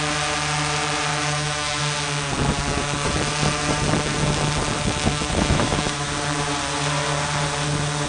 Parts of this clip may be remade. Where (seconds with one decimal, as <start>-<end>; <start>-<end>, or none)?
1.1-1.8; 5.1-6.1

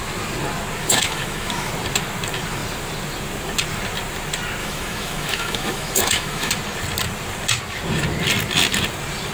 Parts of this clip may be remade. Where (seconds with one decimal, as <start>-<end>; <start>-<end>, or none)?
0.8-1.7; 4.6-6.5

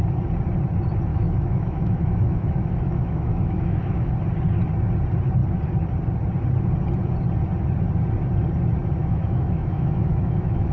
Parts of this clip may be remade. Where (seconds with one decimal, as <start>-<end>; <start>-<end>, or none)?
1.1-4.1; 9.0-10.7

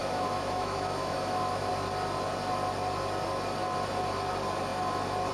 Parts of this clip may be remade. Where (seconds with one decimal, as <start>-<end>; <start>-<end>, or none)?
0.0-1.7